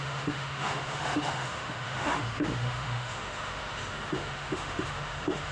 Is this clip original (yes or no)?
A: no